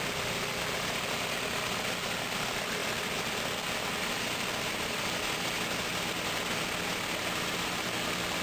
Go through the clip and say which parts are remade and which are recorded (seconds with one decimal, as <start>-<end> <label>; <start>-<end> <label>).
0.0-8.4 recorded

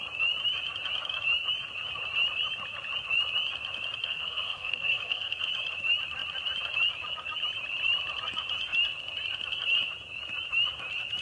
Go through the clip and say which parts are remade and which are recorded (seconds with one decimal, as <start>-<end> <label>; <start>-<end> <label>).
0.0-4.0 recorded; 4.0-5.5 remade; 5.5-11.2 recorded

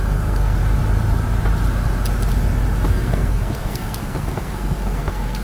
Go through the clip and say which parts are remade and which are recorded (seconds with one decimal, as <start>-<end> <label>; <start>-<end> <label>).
0.0-0.6 remade; 0.6-2.9 recorded; 2.9-5.4 remade

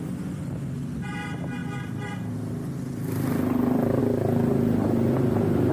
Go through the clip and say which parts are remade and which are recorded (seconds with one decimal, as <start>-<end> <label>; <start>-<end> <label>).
0.0-5.7 recorded

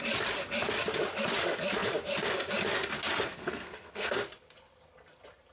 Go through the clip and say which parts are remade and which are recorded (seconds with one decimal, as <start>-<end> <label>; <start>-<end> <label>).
0.0-3.3 recorded; 3.3-4.2 remade; 4.2-5.5 recorded

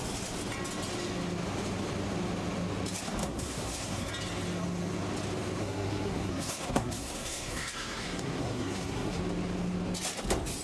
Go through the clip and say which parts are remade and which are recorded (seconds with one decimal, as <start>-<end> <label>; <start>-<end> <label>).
0.0-3.2 recorded; 3.2-4.1 remade; 4.1-5.6 recorded; 5.6-9.2 remade; 9.2-10.6 recorded